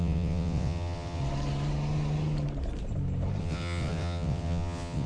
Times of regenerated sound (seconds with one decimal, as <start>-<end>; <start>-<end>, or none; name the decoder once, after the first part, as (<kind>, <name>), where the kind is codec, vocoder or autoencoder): 0.0-1.2 (vocoder, WaveNeXt); 3.4-5.1